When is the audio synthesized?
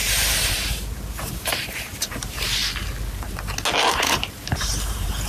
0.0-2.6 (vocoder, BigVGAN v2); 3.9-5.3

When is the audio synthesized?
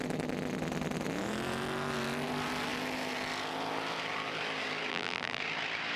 4.9-5.4 (vocoder, BigVGAN v2)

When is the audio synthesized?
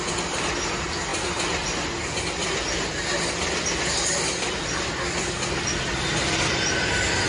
none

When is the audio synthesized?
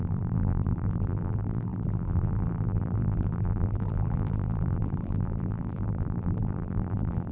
0.0-7.3 (vocoder, BigVGAN v2)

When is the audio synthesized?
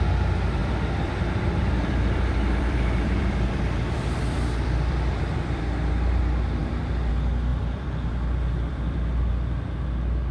0.6-5.6 (vocoder, BigVGAN v2); 6.6-7.1; 7.5-9.3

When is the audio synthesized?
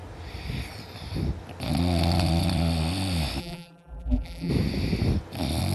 3.4-4.5 (vocoder, BigVGAN v2)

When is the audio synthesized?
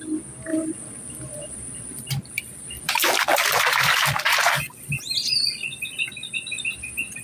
0.5-2.9 (vocoder, BigVGAN v2)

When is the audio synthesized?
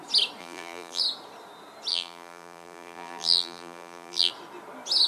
0.4-1.0 (vocoder, BigVGAN v2); 1.9-4.3